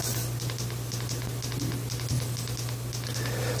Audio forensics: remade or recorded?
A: recorded